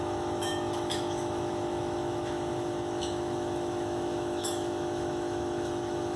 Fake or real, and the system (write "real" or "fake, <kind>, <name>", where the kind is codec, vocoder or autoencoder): fake, autoencoder, DAC-VAE